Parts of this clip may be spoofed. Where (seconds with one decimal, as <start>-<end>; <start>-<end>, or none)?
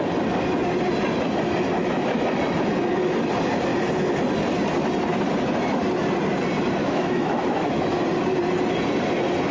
1.8-2.4; 6.8-8.0